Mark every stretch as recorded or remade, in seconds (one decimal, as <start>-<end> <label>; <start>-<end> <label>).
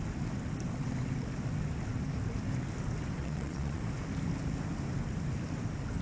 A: 0.0-3.2 recorded; 3.2-3.8 remade; 3.8-6.0 recorded